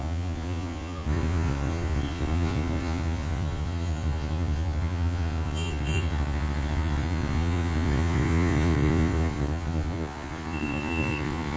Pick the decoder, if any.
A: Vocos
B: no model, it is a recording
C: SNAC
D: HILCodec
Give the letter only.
A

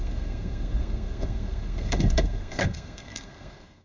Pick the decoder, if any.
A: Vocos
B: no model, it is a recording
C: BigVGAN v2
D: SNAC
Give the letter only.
D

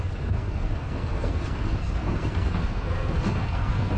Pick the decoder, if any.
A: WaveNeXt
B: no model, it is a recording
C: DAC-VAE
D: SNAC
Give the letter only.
D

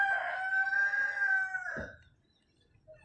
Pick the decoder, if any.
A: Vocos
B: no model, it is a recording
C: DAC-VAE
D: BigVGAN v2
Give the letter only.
B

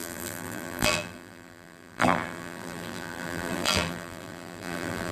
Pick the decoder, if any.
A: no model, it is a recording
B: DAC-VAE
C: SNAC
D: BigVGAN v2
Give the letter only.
D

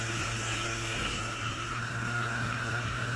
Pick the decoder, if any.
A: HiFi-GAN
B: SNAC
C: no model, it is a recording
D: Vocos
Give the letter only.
B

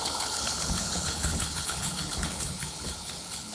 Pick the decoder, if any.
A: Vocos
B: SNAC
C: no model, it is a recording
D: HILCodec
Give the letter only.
D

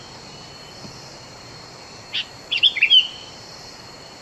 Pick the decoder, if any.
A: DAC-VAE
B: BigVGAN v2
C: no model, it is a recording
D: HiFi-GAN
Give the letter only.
B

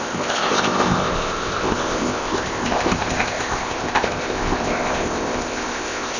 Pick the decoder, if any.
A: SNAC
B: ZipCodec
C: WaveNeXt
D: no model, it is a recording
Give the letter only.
B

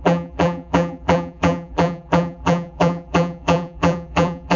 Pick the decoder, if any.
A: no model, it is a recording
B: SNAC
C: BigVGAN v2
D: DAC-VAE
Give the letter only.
C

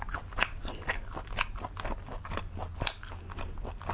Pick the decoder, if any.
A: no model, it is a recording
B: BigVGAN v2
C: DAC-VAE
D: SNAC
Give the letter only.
A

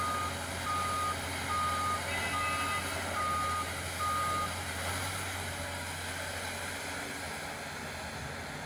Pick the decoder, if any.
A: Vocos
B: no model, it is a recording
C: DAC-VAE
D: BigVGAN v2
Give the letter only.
B